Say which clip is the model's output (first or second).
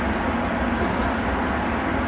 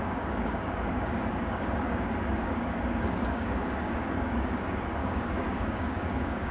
second